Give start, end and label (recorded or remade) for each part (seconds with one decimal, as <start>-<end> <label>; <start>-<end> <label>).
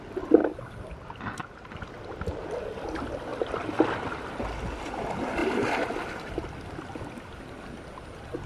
0.0-8.5 recorded